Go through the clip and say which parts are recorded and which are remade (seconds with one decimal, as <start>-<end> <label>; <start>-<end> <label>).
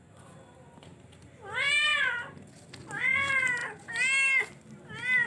0.0-5.3 recorded